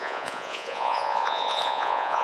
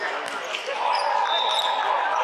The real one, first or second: second